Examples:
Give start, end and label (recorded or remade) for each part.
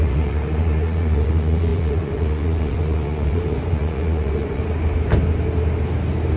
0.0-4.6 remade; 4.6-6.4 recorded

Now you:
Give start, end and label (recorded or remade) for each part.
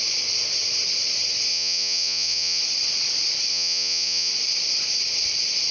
0.0-1.5 recorded; 1.5-2.6 remade; 2.6-3.5 recorded; 3.5-4.3 remade; 4.3-5.7 recorded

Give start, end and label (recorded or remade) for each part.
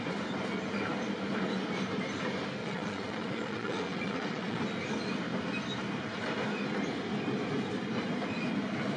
0.0-2.6 recorded; 2.6-4.6 remade; 4.6-9.0 recorded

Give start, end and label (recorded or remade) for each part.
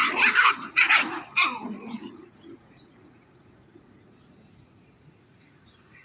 0.0-6.0 remade